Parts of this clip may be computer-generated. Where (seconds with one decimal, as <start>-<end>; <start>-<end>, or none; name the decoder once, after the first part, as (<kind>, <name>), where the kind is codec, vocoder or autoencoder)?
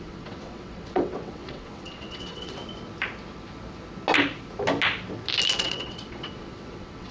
0.0-2.6 (vocoder, WaveNeXt); 5.6-7.1